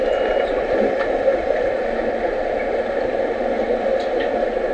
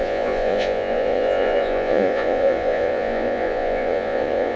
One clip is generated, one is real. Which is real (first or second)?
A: first